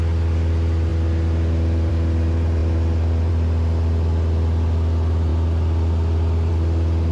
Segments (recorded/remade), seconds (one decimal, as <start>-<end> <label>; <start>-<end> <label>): 0.0-7.1 recorded